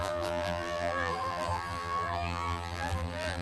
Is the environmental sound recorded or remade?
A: remade